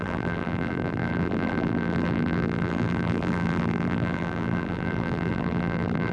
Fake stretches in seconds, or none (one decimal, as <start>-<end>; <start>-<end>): 0.0-6.1